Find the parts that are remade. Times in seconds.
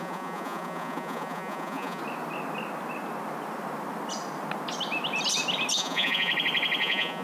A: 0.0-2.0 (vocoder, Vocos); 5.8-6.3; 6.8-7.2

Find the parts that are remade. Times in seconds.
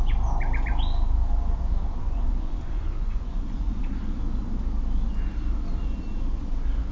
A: 2.0-3.8 (vocoder, Vocos)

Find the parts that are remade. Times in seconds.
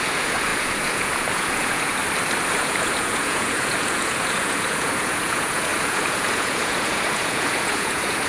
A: 0.0-2.0 (vocoder, Vocos); 2.5-8.3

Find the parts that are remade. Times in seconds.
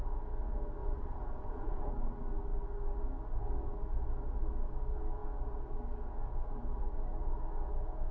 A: 0.8-1.9 (vocoder, Vocos)